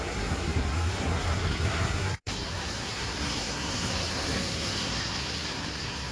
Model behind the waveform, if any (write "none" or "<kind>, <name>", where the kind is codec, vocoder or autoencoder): codec, SNAC